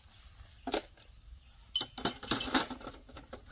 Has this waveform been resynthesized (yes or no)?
no